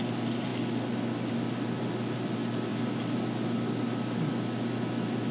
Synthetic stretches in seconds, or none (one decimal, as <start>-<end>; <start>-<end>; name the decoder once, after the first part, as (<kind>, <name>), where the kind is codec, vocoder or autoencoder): none